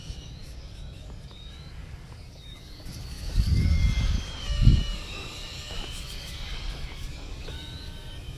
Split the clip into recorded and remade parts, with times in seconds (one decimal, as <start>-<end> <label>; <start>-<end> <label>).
0.0-8.4 remade